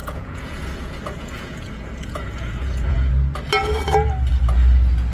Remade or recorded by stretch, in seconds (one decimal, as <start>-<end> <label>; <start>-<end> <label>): 0.0-3.1 remade; 3.1-5.1 recorded